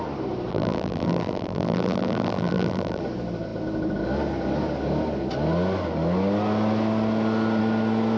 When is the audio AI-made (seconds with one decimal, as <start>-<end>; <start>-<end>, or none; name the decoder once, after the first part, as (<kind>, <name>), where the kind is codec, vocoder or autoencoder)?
0.5-3.0 (vocoder, BigVGAN v2)